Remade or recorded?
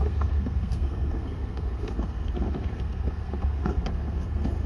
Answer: remade